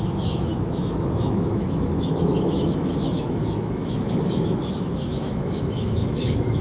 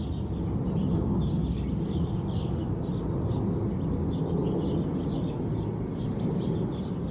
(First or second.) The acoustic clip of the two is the second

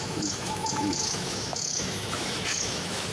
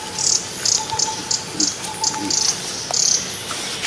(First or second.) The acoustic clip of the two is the second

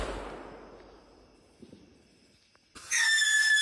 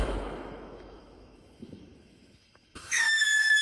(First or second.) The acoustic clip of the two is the first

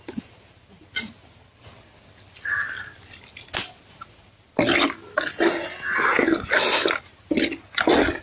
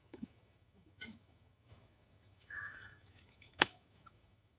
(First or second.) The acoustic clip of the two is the first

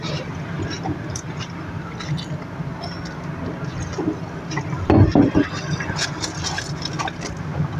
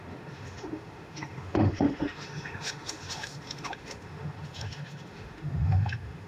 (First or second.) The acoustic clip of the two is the first